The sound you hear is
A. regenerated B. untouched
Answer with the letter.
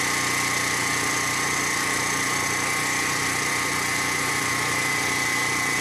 B